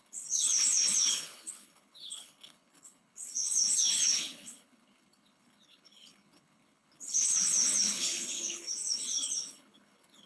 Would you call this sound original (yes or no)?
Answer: no